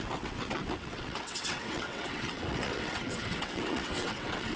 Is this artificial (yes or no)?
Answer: yes